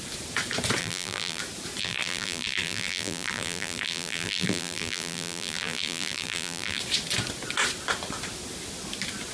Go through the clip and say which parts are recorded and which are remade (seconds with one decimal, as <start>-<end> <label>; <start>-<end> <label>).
0.0-0.8 recorded; 0.8-1.4 remade; 1.4-1.8 recorded; 1.8-6.8 remade; 6.8-9.3 recorded